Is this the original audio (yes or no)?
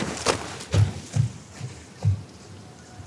yes